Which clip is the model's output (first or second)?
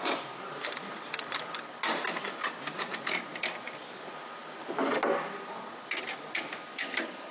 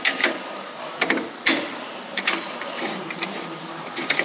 second